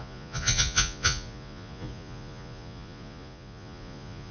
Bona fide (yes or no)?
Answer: no